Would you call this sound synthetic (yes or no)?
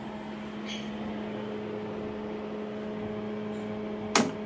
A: no